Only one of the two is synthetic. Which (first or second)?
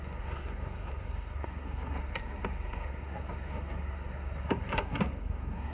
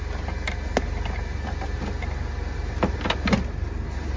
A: first